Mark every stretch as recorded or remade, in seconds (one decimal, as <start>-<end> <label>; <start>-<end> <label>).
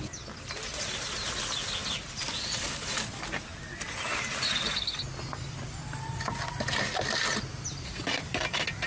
0.0-8.9 recorded